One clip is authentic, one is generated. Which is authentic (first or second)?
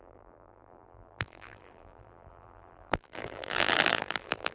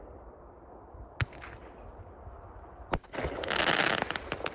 second